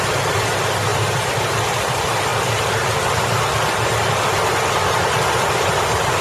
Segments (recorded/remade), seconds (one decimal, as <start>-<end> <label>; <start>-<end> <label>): 0.0-6.2 recorded